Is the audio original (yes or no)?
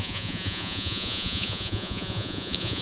no